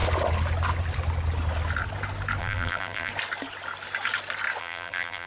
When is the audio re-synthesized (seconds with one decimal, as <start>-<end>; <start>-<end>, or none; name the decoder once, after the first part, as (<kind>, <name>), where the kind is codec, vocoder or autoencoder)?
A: 2.4-3.1 (vocoder, BigVGAN v2); 4.6-5.3